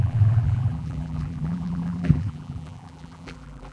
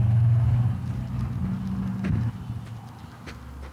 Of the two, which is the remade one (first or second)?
first